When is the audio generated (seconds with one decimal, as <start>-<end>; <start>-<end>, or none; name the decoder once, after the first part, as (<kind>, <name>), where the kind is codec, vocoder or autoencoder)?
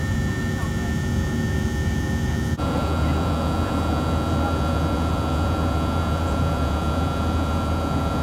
0.0-8.2 (vocoder, Vocos)